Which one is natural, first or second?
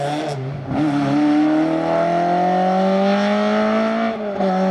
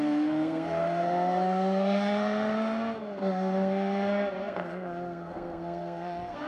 first